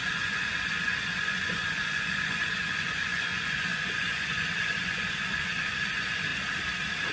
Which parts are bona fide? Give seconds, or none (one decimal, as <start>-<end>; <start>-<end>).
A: 6.3-7.1